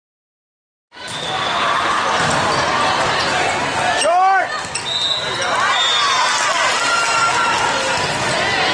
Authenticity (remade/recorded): recorded